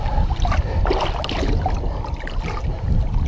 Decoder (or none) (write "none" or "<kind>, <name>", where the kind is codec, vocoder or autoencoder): none